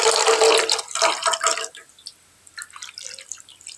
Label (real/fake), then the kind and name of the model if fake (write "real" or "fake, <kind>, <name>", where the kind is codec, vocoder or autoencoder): real